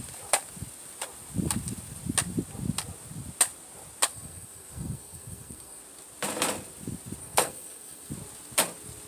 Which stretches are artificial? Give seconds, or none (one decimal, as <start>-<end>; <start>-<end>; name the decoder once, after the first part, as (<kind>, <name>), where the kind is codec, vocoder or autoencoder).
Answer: 4.1-5.8 (codec, SNAC); 7.2-8.1